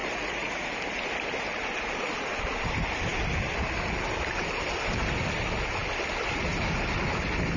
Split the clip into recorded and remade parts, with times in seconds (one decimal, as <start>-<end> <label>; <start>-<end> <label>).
0.0-0.7 remade; 0.7-7.6 recorded